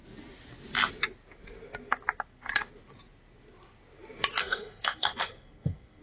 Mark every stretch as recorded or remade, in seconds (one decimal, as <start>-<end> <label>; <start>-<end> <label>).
0.0-4.4 recorded; 4.4-6.0 remade